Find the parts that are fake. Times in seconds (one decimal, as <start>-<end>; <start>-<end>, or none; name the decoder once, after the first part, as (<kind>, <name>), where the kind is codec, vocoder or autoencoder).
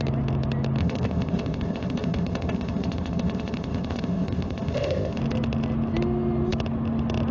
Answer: 0.8-5.2 (codec, ZipCodec)